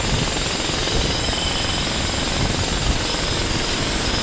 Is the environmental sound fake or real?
real